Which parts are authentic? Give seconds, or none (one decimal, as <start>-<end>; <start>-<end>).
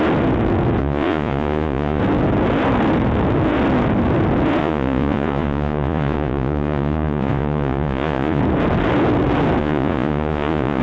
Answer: 0.0-0.8; 2.0-4.6; 8.4-9.6